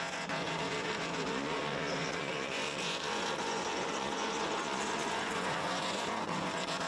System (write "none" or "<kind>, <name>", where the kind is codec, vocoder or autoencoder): vocoder, Vocos